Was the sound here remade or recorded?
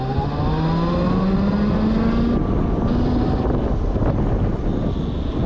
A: recorded